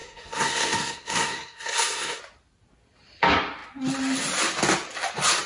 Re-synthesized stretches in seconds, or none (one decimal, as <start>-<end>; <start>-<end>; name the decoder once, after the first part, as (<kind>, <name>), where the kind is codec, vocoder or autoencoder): 0.0-2.2 (codec, SNAC)